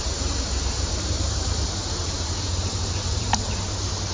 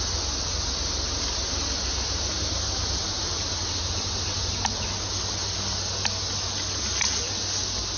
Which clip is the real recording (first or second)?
second